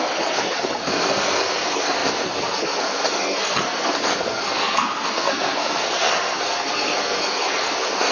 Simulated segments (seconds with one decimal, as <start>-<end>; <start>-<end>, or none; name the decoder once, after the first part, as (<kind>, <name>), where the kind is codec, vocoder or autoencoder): 0.0-8.1 (codec, SNAC)